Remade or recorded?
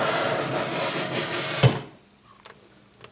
recorded